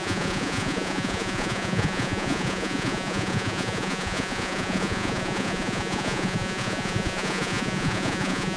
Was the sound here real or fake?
fake